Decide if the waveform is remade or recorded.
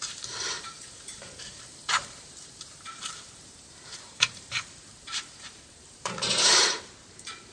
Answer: remade